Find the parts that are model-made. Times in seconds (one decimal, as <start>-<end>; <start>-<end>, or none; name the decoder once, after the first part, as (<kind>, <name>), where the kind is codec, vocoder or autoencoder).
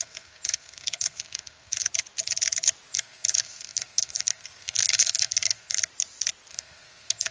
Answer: 0.0-1.8 (codec, SNAC); 2.9-5.8; 6.5-7.3